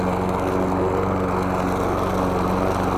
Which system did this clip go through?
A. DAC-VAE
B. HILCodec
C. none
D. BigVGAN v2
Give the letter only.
C